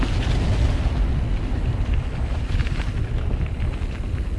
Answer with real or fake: real